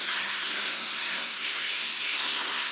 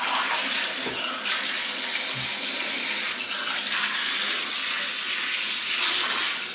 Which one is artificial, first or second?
first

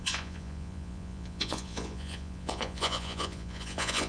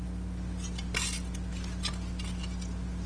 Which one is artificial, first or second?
first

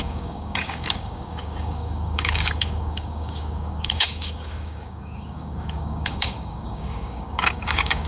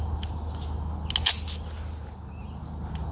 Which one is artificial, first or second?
first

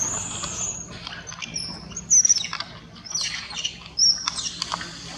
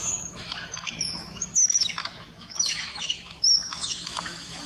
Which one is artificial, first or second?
second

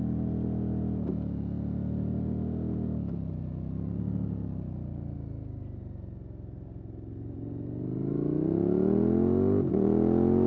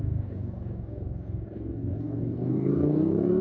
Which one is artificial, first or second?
second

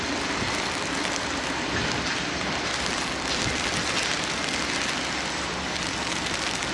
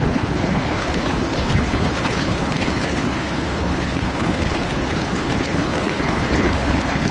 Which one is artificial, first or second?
second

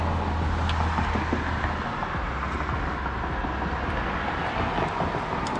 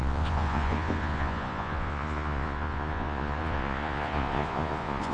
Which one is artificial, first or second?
second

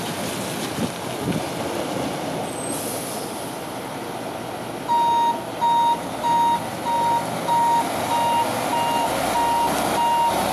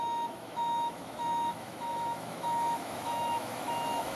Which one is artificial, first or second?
second